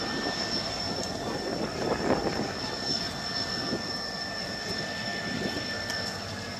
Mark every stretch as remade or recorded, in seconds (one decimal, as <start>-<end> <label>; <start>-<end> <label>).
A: 0.0-1.5 recorded; 1.5-2.6 remade; 2.6-5.1 recorded; 5.1-6.6 remade